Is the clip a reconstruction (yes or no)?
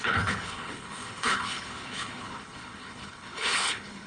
yes